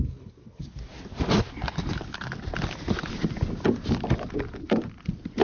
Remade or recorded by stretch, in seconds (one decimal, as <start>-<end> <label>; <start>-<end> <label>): 0.0-5.4 recorded